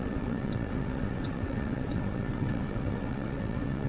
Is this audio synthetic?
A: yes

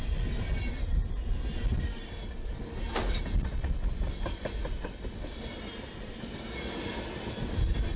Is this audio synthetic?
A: no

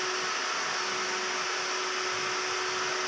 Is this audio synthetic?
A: no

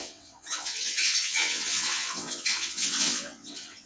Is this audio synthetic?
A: yes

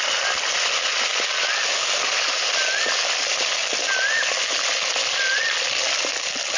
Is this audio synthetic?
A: no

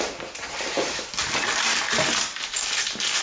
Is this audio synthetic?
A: no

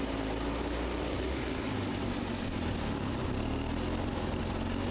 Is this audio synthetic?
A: no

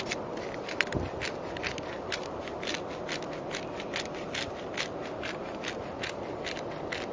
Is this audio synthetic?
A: no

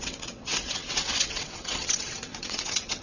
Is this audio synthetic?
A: yes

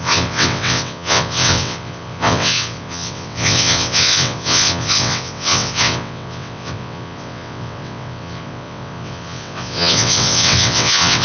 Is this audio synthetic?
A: yes